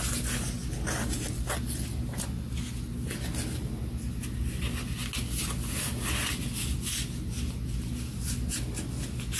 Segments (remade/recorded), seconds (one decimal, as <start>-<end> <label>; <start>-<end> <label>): 0.0-9.4 recorded